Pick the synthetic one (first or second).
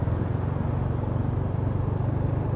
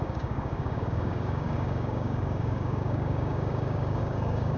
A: second